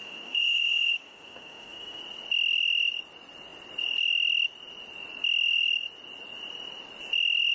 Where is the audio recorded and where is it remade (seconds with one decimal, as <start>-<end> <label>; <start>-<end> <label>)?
0.0-2.0 remade; 2.0-7.5 recorded

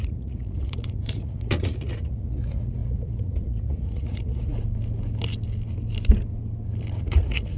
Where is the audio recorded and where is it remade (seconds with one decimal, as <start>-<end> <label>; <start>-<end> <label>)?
0.0-4.5 remade; 4.5-7.0 recorded; 7.0-7.6 remade